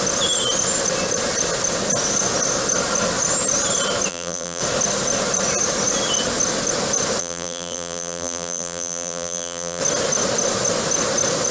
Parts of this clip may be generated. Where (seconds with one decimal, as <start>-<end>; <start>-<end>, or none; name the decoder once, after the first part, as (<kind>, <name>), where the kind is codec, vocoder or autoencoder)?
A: 4.1-4.6 (vocoder, BigVGAN v2); 7.2-9.8